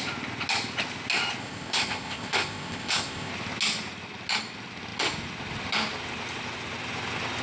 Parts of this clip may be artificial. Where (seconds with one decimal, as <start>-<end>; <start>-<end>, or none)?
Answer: 1.4-3.3